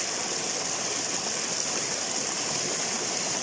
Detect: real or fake real